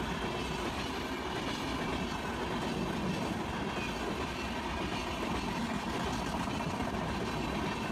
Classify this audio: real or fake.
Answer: real